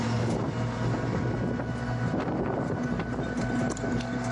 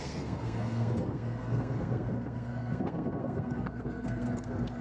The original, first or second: first